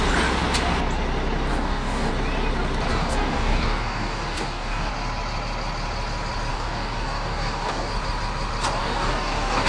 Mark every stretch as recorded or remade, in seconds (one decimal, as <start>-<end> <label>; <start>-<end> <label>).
0.0-1.5 recorded; 1.5-2.1 remade; 2.1-2.9 recorded; 2.9-4.9 remade; 4.9-6.5 recorded; 6.5-7.9 remade; 7.9-8.8 recorded; 8.8-9.7 remade